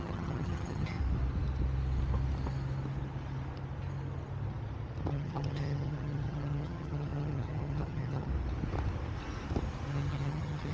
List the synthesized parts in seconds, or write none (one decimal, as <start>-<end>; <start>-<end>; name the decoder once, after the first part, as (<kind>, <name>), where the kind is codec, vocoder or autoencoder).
0.0-1.0 (vocoder, HiFi-GAN); 5.1-8.3; 9.9-10.7